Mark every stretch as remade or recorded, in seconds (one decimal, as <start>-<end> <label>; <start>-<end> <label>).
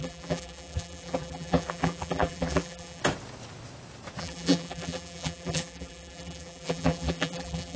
0.0-3.0 remade; 3.0-4.2 recorded; 4.2-7.8 remade